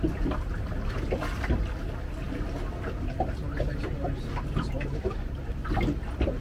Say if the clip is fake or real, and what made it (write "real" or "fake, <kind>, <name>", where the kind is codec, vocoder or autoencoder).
real